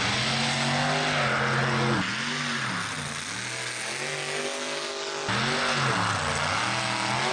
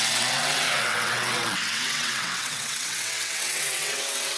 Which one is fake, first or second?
second